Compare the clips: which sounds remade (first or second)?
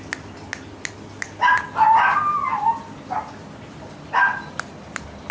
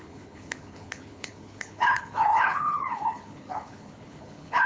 second